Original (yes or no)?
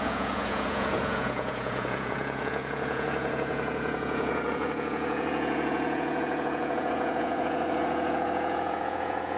no